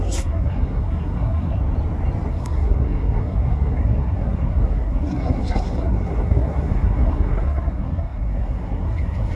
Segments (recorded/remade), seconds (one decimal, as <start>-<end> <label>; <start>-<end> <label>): 0.0-1.6 remade; 1.6-2.3 recorded; 2.3-9.4 remade